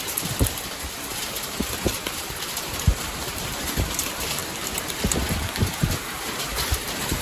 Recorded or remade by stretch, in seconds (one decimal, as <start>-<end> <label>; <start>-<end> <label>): 0.0-4.4 remade; 4.4-5.9 recorded; 5.9-7.2 remade